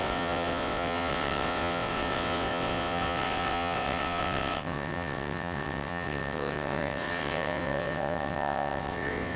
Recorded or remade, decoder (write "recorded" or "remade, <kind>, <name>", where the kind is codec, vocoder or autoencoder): remade, vocoder, WaveNeXt